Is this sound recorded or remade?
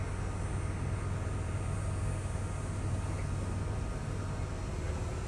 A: recorded